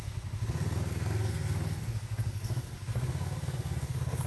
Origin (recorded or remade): remade